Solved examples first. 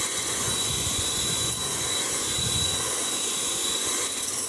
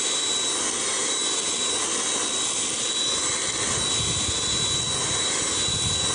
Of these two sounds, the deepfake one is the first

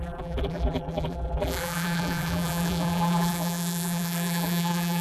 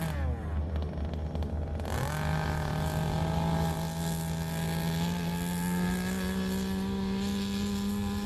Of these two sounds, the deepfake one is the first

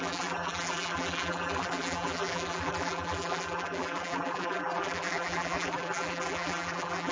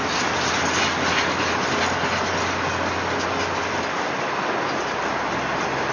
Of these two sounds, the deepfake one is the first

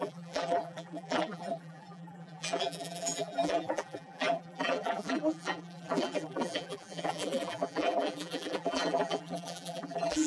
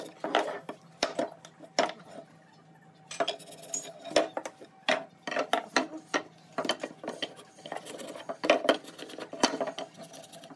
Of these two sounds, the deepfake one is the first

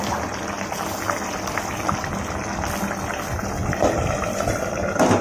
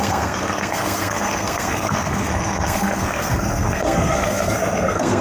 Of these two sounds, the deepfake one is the second